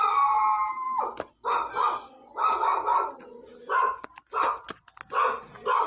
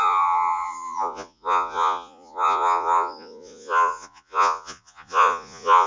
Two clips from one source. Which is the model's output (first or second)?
second